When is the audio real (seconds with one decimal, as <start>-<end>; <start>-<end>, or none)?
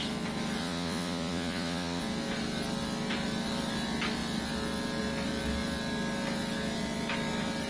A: 0.0-0.6; 2.0-7.7